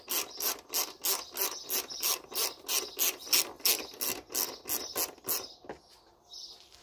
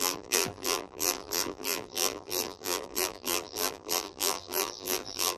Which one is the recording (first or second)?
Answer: first